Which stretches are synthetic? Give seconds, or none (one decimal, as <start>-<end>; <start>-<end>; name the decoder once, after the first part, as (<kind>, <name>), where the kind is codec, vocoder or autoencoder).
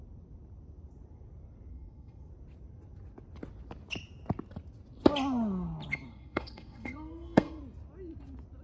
1.7-2.3 (codec, SNAC); 6.1-7.6